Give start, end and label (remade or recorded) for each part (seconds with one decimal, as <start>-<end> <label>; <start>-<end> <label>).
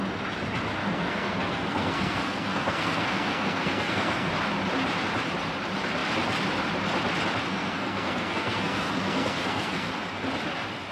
0.0-0.8 recorded; 0.8-4.3 remade; 4.3-7.5 recorded; 7.5-9.9 remade; 9.9-10.9 recorded